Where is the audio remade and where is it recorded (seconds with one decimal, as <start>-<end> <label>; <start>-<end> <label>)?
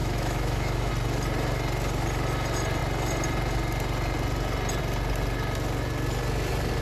0.0-0.9 remade; 0.9-6.8 recorded